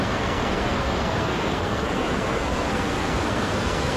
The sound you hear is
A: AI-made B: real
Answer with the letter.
A